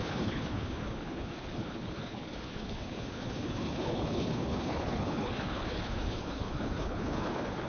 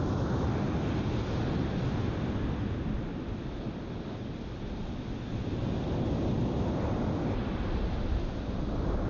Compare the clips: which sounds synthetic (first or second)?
first